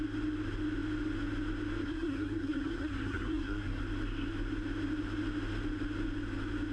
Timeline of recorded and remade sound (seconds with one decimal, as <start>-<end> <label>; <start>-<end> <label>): 0.0-1.8 recorded; 1.8-3.8 remade; 3.8-6.7 recorded